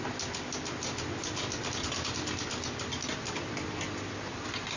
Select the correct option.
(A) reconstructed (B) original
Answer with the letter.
B